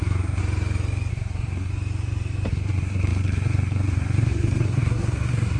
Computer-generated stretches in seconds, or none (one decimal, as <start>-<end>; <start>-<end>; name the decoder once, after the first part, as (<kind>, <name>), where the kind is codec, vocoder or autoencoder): 0.0-0.4 (codec, SNAC); 1.1-1.7; 2.5-5.6